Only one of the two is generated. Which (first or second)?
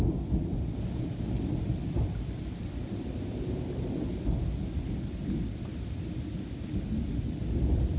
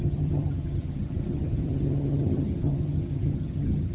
second